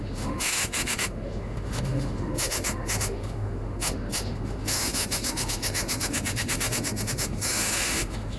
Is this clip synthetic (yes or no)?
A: yes